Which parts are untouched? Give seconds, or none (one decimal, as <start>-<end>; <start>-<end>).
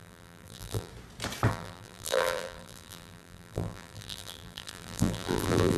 0.9-1.5